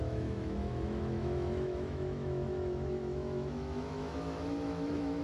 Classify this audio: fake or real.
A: fake